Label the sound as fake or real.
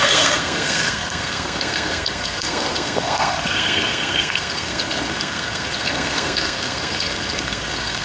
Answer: fake